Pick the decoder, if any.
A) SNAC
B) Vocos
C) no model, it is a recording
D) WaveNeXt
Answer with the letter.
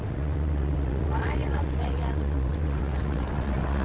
D